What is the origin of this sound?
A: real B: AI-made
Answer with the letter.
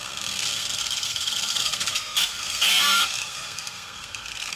B